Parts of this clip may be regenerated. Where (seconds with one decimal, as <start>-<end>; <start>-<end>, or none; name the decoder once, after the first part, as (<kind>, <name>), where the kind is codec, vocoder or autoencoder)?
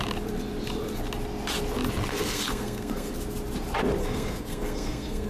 2.1-3.1 (codec, SNAC); 4.0-5.3